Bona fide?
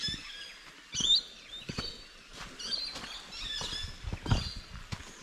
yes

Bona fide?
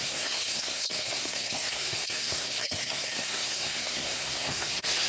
no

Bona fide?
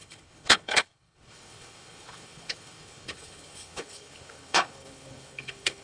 no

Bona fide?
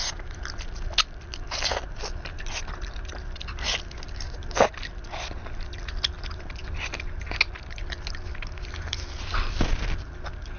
yes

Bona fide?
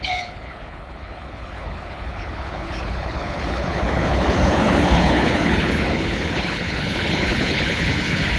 no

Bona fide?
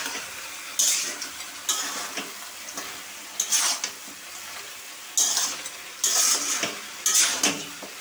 yes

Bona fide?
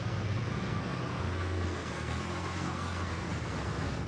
no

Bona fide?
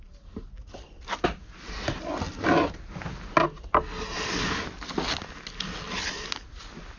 yes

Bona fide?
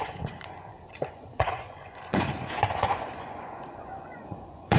no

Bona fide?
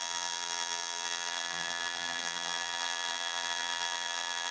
no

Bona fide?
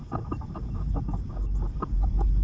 yes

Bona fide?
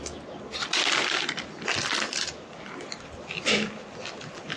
yes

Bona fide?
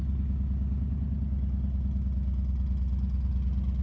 yes